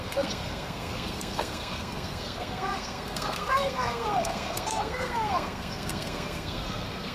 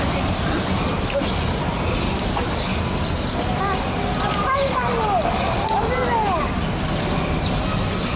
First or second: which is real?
second